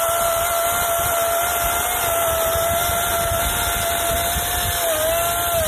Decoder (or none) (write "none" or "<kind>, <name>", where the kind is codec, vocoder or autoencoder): none